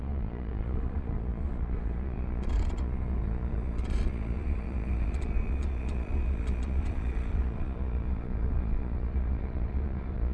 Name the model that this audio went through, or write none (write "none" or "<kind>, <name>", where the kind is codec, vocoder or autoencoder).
vocoder, Vocos